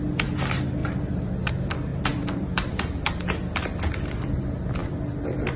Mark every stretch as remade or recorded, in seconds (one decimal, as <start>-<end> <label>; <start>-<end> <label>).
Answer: 0.0-0.8 recorded; 0.8-1.5 remade; 1.5-1.9 recorded; 1.9-3.0 remade; 3.0-5.6 recorded